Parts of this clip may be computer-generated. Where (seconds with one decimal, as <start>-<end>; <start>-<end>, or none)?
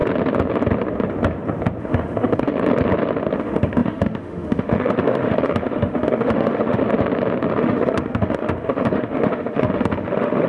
1.8-2.5; 3.4-6.8; 7.6-10.5